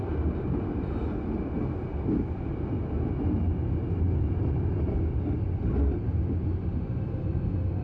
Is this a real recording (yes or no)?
yes